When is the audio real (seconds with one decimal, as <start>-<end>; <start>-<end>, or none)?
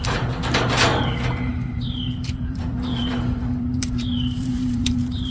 0.9-1.5